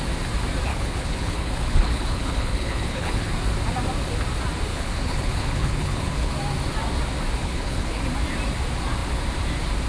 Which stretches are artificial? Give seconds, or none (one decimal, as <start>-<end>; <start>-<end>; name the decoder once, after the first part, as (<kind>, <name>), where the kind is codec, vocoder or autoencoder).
0.7-3.3 (codec, HILCodec); 4.7-6.3; 7.4-8.0